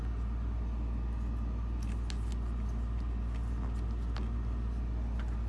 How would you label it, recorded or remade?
recorded